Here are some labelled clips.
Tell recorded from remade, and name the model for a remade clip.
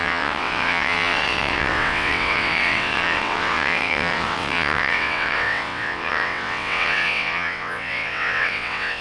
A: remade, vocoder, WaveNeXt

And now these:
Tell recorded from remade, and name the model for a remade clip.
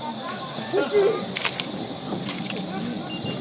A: recorded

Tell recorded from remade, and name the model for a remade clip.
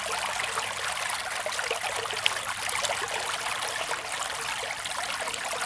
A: recorded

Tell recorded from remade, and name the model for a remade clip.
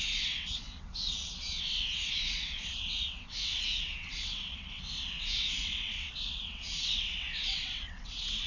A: remade, vocoder, WaveNeXt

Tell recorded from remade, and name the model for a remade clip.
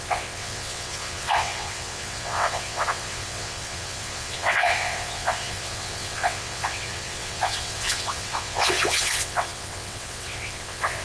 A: remade, vocoder, WaveNeXt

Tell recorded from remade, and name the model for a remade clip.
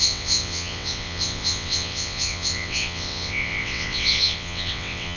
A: remade, vocoder, WaveNeXt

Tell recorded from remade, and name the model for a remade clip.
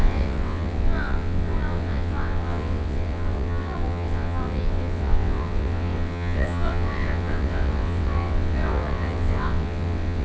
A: remade, vocoder, WaveNeXt